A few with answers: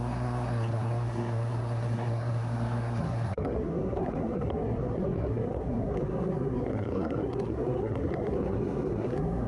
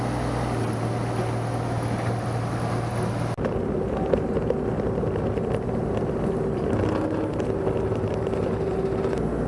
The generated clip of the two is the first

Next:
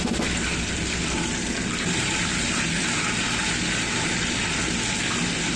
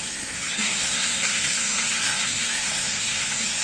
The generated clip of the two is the second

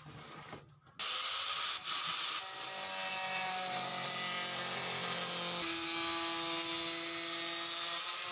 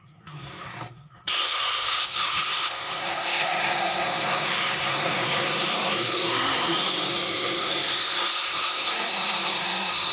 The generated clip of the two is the second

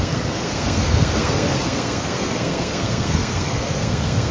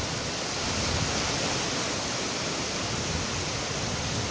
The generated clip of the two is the first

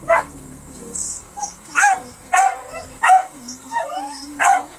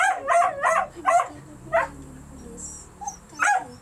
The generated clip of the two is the first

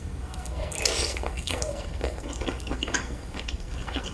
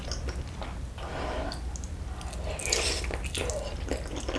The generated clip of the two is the first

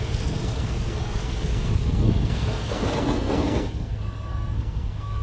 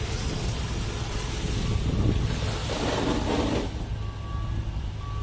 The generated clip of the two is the first